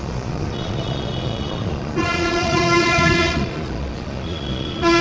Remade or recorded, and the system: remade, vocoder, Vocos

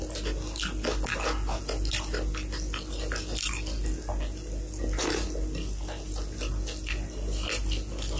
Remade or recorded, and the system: recorded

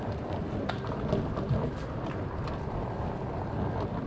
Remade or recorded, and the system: recorded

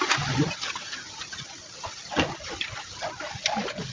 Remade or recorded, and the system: recorded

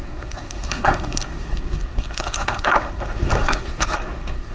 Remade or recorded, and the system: remade, codec, SNAC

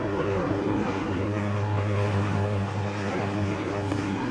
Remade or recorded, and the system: remade, codec, SNAC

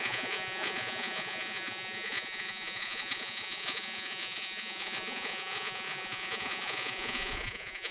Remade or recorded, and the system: remade, vocoder, Vocos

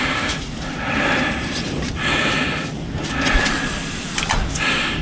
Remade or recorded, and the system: recorded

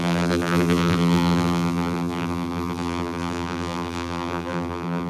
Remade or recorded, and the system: remade, vocoder, BigVGAN v2